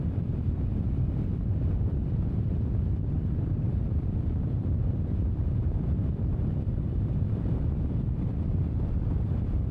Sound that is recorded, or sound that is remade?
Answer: remade